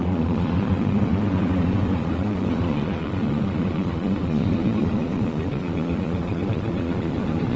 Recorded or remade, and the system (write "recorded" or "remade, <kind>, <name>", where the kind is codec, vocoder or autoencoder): remade, vocoder, Vocos